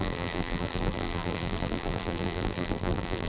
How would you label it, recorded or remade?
remade